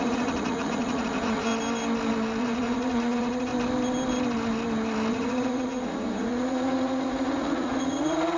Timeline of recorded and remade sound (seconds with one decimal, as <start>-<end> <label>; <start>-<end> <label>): 0.0-1.5 remade; 1.5-2.4 recorded; 2.4-3.5 remade; 3.5-5.1 recorded; 5.1-8.4 remade